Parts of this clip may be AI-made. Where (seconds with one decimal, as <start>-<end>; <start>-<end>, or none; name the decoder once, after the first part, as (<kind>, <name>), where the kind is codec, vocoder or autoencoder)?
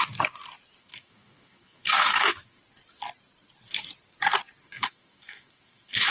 0.8-2.6 (autoencoder, DAC-VAE); 4.6-6.1